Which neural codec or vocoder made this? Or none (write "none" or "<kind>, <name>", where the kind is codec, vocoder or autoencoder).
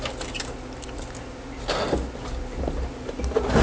none